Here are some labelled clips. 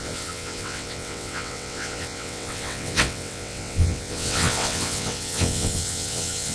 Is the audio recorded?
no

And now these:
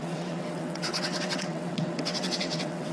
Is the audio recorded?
no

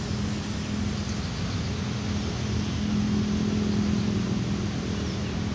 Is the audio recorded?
yes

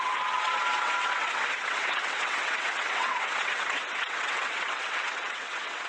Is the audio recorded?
no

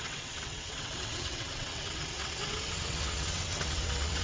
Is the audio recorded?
no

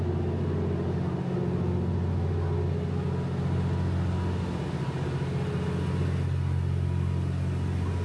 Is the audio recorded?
yes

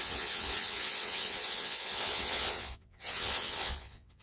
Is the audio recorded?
no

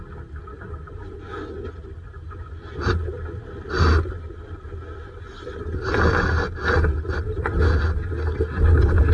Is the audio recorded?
yes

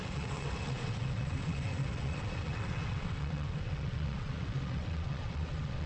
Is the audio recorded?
no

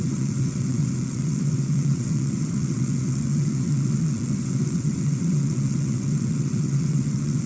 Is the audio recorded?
no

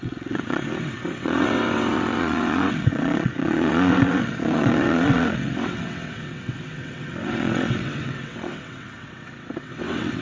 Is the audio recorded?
no